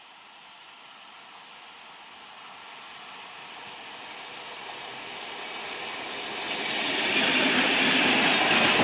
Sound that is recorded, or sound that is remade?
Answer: recorded